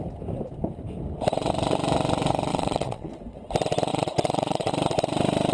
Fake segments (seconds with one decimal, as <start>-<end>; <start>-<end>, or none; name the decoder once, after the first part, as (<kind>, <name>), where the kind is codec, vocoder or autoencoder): 2.5-3.1 (vocoder, WaveNeXt); 3.9-4.7